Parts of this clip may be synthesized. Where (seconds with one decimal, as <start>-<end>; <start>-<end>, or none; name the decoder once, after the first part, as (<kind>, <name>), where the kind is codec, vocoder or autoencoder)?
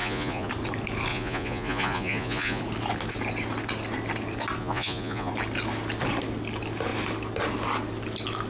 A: 0.0-0.5 (vocoder, Vocos); 1.1-2.6; 4.6-5.3